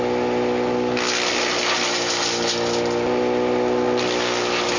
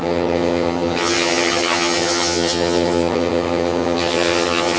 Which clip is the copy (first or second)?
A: second